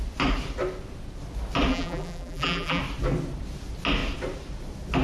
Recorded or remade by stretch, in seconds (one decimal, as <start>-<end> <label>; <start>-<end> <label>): 0.0-1.7 recorded; 1.7-2.8 remade; 2.8-5.0 recorded